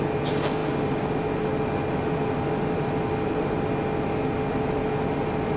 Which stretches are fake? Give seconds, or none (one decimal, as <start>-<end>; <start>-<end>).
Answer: none